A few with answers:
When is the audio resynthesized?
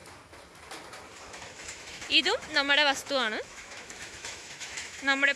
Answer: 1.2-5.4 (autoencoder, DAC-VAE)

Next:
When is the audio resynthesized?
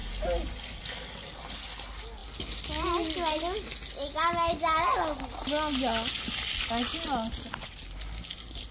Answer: none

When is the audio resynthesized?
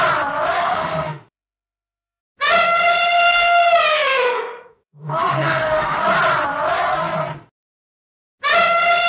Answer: 0.6-2.2 (autoencoder, DAC-VAE); 3.9-6.0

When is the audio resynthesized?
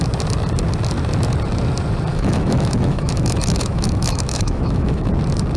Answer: 2.1-5.1 (autoencoder, DAC-VAE)